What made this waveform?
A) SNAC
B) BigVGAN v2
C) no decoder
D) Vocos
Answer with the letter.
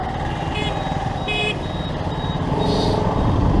C